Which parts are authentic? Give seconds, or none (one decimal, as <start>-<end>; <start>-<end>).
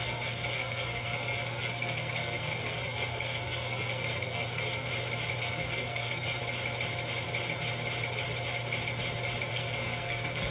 4.9-5.4; 6.4-9.5